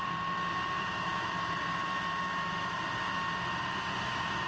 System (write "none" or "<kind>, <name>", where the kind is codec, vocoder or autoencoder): none